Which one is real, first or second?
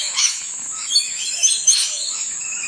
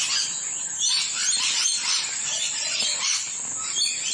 second